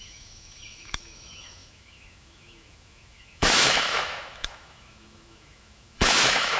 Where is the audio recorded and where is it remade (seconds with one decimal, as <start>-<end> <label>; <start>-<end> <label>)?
0.0-6.6 remade